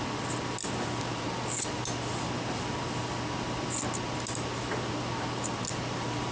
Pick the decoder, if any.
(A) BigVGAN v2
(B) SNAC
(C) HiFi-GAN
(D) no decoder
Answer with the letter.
D